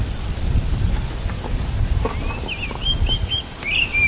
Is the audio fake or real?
real